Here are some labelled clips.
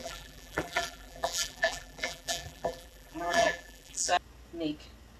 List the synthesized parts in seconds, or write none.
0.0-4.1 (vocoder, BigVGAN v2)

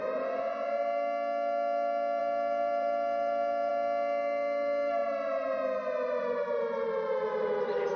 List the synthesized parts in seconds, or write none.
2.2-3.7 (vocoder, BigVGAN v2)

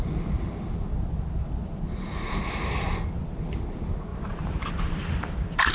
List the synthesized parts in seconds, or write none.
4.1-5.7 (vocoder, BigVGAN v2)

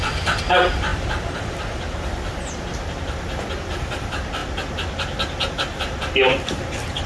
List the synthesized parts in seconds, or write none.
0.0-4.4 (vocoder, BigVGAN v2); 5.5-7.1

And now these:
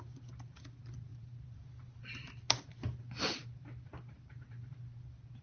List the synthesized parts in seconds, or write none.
1.1-2.3 (vocoder, BigVGAN v2)

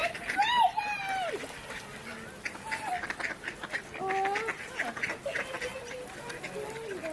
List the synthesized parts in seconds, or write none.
0.0-1.3 (vocoder, BigVGAN v2); 5.7-6.4